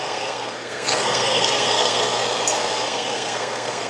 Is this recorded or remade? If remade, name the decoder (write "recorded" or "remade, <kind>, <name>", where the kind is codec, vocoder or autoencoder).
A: remade, codec, SNAC